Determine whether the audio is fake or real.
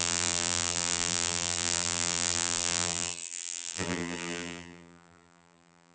fake